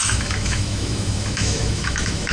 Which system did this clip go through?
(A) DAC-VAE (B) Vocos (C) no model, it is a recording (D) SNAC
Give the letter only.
A